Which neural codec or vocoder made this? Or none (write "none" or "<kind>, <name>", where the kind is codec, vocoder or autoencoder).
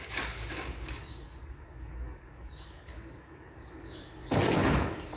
codec, DAC